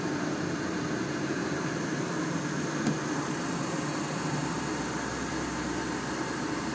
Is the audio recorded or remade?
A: recorded